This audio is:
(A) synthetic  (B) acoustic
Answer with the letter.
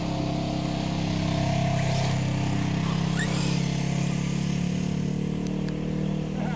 B